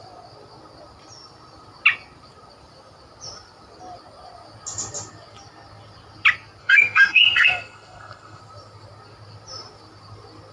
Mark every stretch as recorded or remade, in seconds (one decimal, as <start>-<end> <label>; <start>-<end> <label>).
0.0-6.6 recorded; 6.6-8.4 remade; 8.4-10.5 recorded

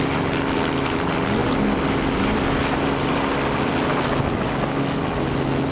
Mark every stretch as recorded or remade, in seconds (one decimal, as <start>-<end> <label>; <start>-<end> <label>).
0.0-5.7 recorded

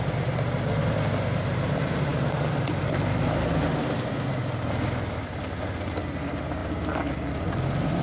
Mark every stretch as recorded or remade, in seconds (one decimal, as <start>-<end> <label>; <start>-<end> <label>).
0.0-8.0 recorded

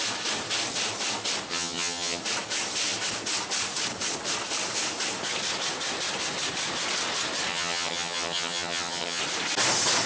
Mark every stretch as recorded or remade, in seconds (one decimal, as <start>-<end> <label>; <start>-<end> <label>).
0.0-1.5 recorded; 1.5-2.2 remade; 2.2-7.5 recorded; 7.5-9.2 remade; 9.2-10.1 recorded